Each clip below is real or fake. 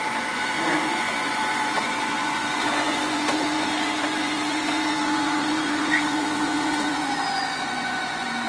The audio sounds fake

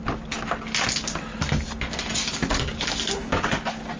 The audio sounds real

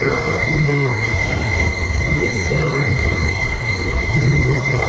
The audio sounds fake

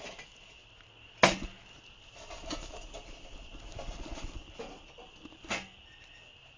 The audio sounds real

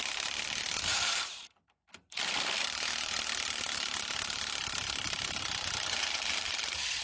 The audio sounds fake